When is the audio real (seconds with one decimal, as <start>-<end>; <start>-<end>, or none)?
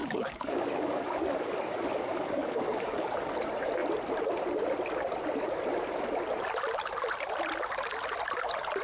3.3-8.8